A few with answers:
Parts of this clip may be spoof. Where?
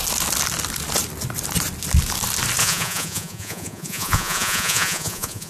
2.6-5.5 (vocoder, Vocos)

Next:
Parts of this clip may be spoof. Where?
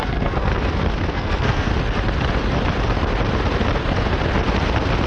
0.0-0.5 (codec, SNAC); 1.1-1.7